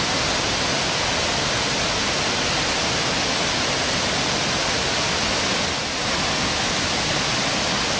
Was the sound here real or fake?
real